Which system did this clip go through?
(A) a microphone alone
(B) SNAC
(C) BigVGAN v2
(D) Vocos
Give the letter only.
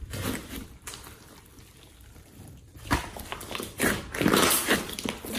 A